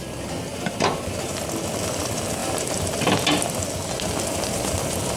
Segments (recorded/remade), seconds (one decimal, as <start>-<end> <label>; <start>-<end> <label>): 0.0-0.5 recorded; 0.5-1.3 remade; 1.3-2.4 recorded; 2.4-3.0 remade; 3.0-5.2 recorded